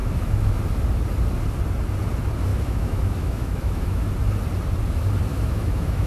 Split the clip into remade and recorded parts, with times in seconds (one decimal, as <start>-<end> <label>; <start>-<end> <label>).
0.0-0.6 remade; 0.6-2.5 recorded; 2.5-4.1 remade; 4.1-5.3 recorded; 5.3-6.1 remade